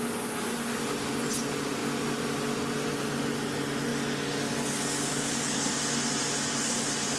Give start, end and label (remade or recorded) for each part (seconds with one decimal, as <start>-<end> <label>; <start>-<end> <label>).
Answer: 0.0-5.1 recorded; 5.1-5.7 remade; 5.7-7.2 recorded